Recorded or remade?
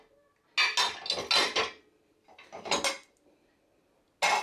recorded